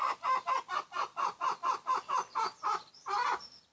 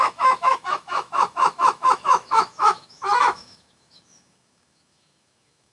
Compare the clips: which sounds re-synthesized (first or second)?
second